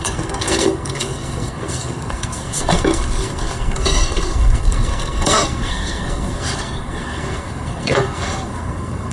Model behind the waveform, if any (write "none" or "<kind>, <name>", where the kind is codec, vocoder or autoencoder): codec, SNAC